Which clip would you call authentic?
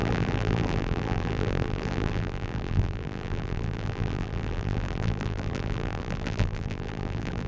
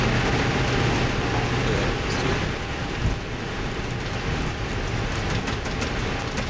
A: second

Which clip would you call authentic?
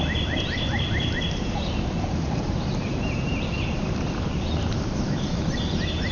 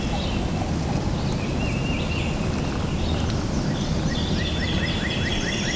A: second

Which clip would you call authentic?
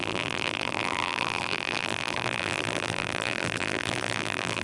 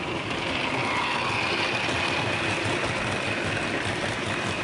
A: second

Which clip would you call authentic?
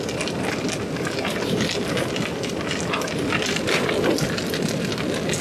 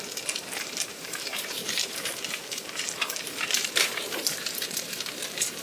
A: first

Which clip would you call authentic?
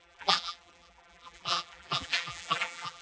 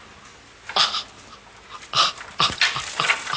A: second